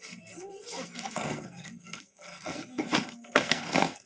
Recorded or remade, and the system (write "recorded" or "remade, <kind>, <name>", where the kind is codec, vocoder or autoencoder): remade, codec, SNAC